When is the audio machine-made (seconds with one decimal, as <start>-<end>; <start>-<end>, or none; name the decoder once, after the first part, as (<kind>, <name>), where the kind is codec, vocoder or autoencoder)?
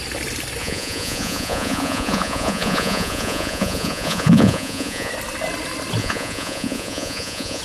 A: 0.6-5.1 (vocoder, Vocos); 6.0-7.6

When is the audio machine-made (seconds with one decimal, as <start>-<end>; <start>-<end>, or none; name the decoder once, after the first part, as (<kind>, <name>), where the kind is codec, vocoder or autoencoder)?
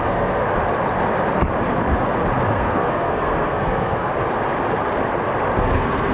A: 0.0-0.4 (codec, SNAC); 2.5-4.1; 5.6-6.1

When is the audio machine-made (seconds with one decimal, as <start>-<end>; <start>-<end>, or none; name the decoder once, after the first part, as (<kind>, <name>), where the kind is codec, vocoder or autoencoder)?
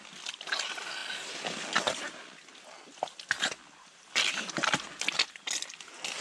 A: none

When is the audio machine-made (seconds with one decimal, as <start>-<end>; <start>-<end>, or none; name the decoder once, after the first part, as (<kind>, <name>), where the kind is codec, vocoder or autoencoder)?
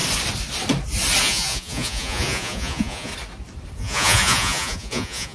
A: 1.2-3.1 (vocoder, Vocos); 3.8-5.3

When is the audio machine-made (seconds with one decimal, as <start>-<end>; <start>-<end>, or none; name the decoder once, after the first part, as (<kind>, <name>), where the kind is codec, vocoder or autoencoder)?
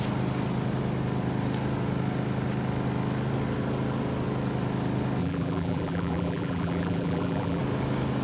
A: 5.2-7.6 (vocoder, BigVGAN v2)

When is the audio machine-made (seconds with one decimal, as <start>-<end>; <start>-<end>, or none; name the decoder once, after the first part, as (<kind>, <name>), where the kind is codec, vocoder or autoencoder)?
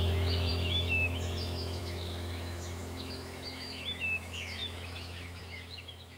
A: 0.0-6.2 (autoencoder, DAC-VAE)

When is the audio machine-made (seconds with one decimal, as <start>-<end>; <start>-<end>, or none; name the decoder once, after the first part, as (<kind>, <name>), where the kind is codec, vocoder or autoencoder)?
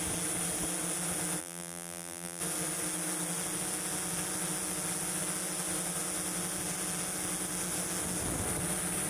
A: 1.4-2.4 (vocoder, BigVGAN v2)